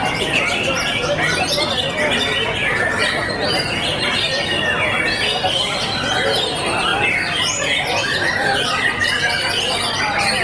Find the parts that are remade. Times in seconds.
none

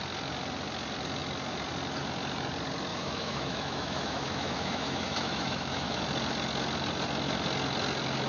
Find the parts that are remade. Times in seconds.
2.9-6.0 (autoencoder, DAC-VAE)

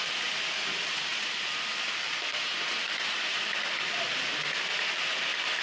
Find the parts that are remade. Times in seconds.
1.1-4.5 (vocoder, BigVGAN v2)

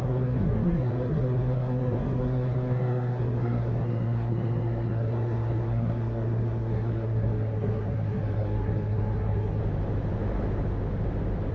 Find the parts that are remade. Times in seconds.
0.0-9.6 (codec, SNAC)

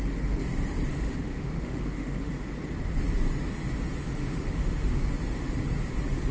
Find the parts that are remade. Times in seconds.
0.9-2.3 (autoencoder, DAC-VAE); 4.0-5.1

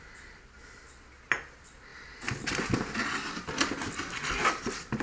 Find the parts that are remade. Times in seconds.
none